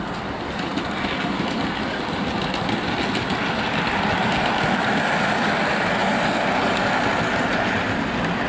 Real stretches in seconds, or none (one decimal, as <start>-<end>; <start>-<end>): 0.0-8.5